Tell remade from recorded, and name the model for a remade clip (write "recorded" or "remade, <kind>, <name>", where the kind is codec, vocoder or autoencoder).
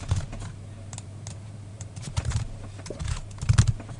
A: recorded